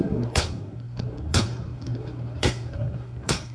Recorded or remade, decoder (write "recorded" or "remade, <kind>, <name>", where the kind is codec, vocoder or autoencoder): remade, codec, SNAC